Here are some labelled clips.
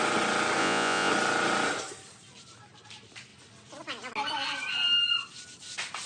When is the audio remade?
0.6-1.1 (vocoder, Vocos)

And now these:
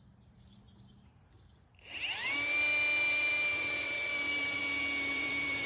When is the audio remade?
0.0-1.7 (vocoder, BigVGAN v2); 3.0-4.6; 5.1-5.7

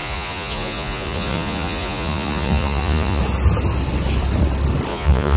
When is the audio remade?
0.0-3.2 (vocoder, Vocos); 4.9-5.4

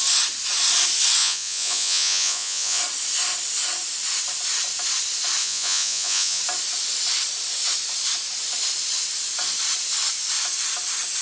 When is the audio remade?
1.2-2.8 (vocoder, Vocos); 5.4-6.4